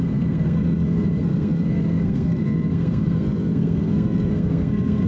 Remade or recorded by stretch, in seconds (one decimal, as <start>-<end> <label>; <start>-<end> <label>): 0.0-5.1 remade